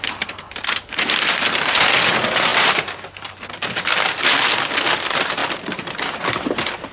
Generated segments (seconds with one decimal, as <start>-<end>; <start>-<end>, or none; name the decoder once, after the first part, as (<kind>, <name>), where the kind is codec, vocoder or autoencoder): none